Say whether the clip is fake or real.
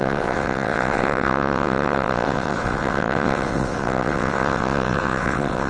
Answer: fake